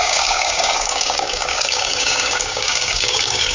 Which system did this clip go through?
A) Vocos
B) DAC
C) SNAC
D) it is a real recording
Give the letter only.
B